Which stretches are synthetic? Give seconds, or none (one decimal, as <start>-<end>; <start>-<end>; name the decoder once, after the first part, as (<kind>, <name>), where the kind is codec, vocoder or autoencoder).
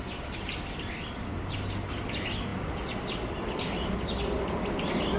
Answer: none